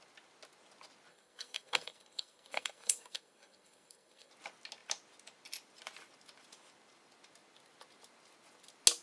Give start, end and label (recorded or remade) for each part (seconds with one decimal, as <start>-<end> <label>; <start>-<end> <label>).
0.0-1.1 recorded; 1.1-4.3 remade; 4.3-9.0 recorded